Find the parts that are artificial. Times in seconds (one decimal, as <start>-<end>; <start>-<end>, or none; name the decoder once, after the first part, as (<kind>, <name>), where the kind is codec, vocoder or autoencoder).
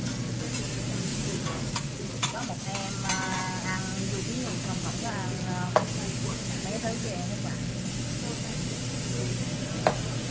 1.1-2.5 (vocoder, Vocos)